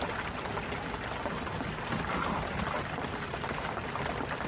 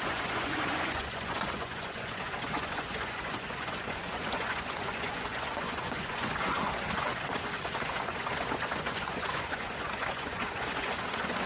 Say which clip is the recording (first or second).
first